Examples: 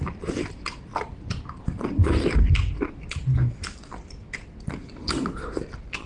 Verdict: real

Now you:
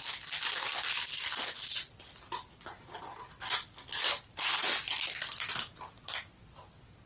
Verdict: real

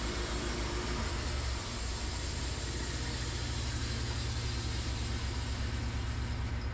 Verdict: real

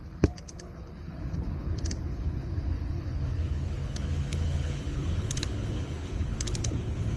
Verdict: fake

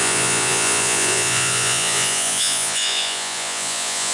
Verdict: fake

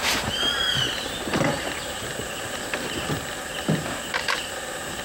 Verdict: fake